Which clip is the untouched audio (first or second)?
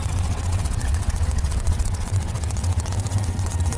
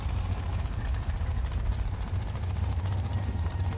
second